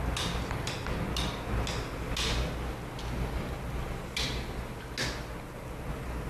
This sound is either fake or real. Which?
real